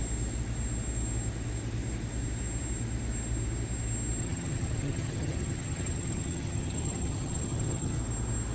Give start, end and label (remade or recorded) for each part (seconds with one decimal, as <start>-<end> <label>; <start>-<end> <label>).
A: 0.0-4.2 recorded; 4.2-8.0 remade; 8.0-8.5 recorded